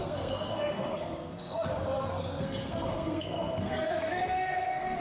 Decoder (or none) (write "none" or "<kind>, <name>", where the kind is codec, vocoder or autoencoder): codec, SNAC